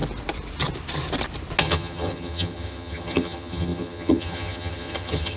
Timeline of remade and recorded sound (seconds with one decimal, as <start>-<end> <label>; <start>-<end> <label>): 0.0-1.6 recorded; 1.6-5.4 remade